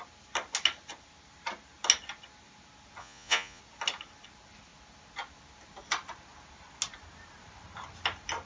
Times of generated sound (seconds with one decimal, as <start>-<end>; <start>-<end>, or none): 3.0-3.6